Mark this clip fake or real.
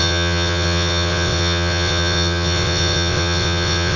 fake